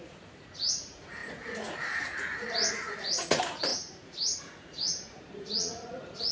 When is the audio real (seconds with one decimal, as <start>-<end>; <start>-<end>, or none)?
none